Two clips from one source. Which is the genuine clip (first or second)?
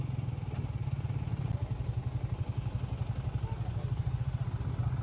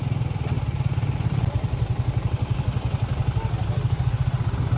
first